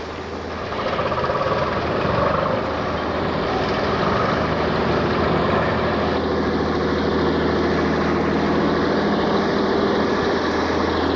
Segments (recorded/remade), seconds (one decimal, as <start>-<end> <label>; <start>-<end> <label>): 0.0-11.2 recorded